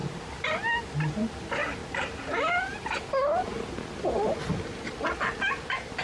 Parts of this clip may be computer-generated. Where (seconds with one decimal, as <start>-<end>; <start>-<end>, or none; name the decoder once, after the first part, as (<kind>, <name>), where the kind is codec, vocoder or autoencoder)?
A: none